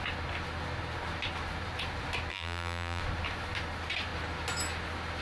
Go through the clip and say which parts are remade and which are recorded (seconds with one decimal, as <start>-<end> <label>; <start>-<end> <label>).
0.0-2.3 recorded; 2.3-3.0 remade; 3.0-5.2 recorded